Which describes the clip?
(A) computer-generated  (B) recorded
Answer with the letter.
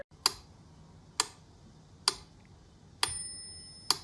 B